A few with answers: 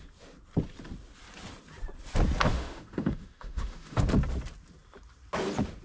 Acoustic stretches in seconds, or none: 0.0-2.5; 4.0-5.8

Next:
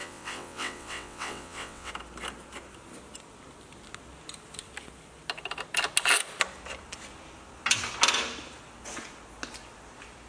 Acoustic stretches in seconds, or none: 1.9-10.3

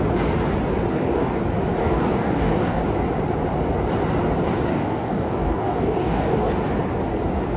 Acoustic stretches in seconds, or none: 0.0-0.9; 1.4-1.8; 2.8-4.7; 6.5-7.6

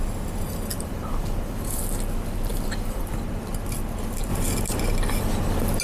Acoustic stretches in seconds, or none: 0.0-0.7; 1.8-2.5; 3.1-5.8

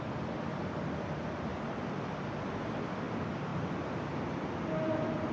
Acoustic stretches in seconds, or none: 0.0-5.3